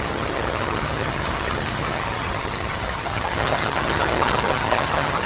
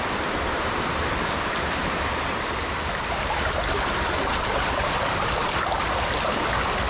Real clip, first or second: second